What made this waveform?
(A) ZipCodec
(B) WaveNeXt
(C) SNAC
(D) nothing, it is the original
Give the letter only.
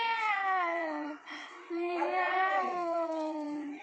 B